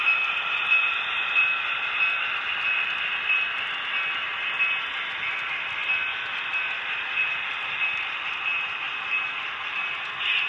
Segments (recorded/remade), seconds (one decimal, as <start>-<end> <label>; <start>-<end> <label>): 0.0-10.5 recorded